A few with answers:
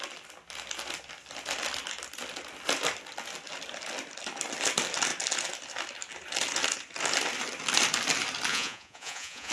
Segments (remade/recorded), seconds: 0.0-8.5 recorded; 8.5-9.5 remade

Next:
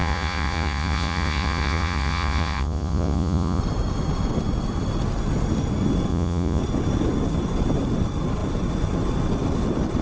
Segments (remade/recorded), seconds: 0.0-3.6 remade; 3.6-6.1 recorded; 6.1-6.6 remade; 6.6-10.0 recorded

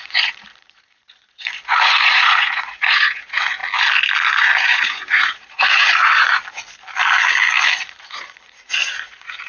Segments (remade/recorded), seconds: 0.0-3.6 remade; 3.6-4.4 recorded; 4.4-6.4 remade; 6.4-7.8 recorded; 7.8-9.5 remade

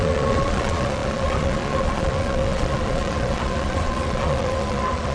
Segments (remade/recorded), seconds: 0.0-5.1 remade